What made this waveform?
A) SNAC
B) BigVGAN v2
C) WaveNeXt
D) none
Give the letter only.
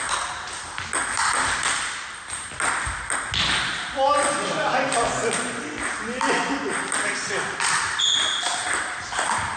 D